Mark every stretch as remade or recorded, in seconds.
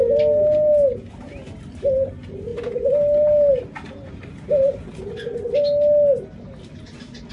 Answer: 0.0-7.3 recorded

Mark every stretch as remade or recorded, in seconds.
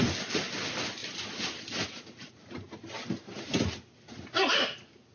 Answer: 0.0-5.1 recorded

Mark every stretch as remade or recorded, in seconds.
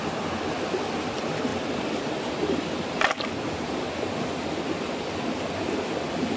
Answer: 0.0-6.4 recorded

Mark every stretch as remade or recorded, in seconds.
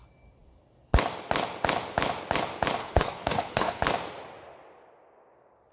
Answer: 0.0-2.8 recorded; 2.8-3.8 remade; 3.8-5.7 recorded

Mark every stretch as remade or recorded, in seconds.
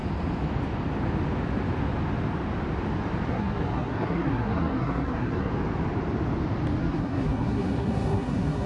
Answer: 0.0-3.3 recorded; 3.3-5.5 remade; 5.5-6.8 recorded; 6.8-8.7 remade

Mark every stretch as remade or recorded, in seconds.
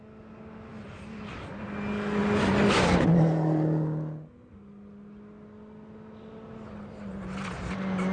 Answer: 0.0-8.1 recorded